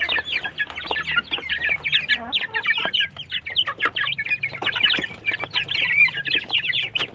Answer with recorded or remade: recorded